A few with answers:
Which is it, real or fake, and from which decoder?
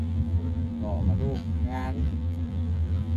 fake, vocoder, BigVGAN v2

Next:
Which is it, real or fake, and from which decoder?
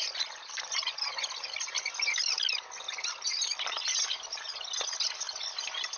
real